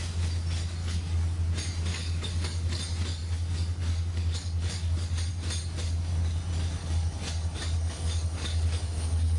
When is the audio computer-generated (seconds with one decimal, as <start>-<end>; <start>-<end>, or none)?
0.8-1.4; 1.9-2.8; 3.2-5.3; 6.8-9.4